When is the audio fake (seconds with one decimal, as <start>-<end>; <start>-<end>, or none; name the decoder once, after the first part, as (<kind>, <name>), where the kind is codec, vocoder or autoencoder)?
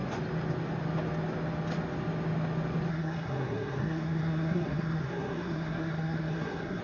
2.9-6.8 (codec, SNAC)